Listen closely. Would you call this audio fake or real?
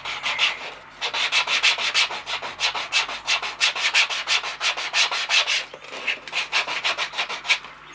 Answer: real